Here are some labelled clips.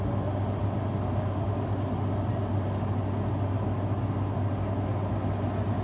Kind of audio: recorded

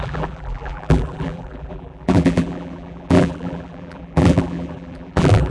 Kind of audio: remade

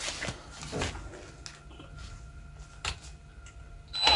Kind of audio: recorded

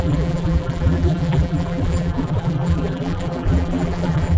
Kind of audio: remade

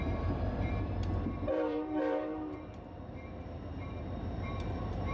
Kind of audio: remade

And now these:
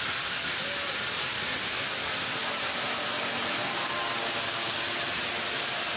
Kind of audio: recorded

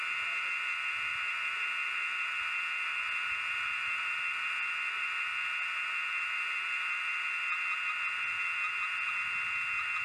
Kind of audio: recorded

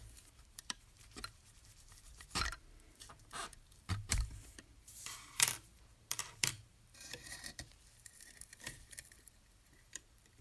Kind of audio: remade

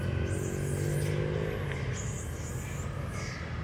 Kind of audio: recorded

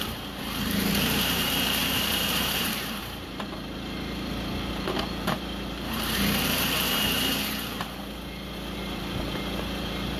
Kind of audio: remade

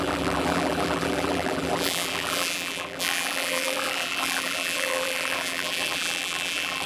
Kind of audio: remade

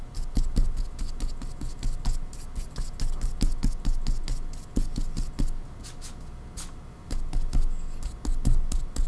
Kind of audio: recorded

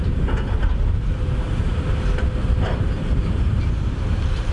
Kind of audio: remade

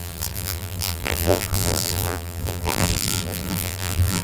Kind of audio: remade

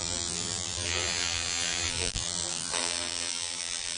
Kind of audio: remade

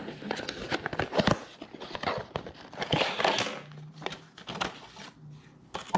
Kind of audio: recorded